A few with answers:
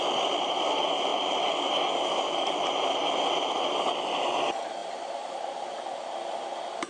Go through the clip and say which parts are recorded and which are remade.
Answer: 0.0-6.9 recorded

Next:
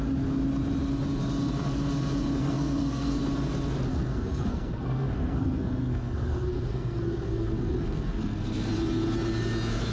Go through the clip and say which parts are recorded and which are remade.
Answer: 0.0-2.4 recorded; 2.4-3.2 remade; 3.2-3.9 recorded; 3.9-8.7 remade; 8.7-9.9 recorded

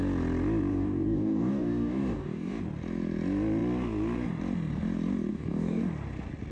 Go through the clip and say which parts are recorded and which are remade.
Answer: 0.0-0.7 recorded; 0.7-2.6 remade; 2.6-5.3 recorded; 5.3-5.8 remade; 5.8-6.5 recorded

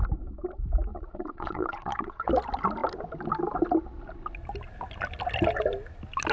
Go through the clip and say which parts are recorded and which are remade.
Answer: 0.0-0.9 recorded; 0.9-2.3 remade; 2.3-6.3 recorded

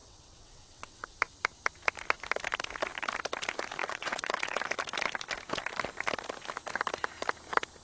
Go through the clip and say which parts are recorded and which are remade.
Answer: 0.0-1.2 remade; 1.2-3.8 recorded; 3.8-4.6 remade; 4.6-7.8 recorded